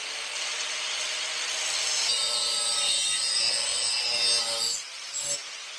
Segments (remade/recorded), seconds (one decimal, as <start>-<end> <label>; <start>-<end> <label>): 0.0-5.8 recorded